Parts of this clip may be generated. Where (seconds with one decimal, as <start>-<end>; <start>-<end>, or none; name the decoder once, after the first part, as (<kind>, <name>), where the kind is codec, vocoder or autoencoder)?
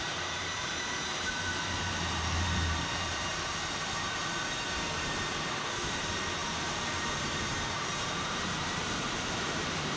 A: 0.0-10.0 (vocoder, BigVGAN v2)